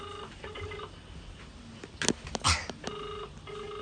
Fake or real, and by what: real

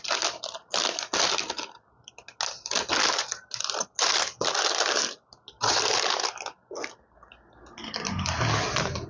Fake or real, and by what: real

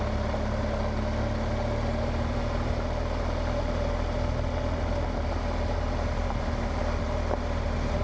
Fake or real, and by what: real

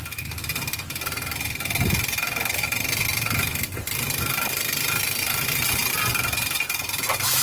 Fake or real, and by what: real